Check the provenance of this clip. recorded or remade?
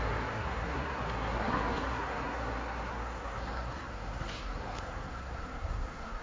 remade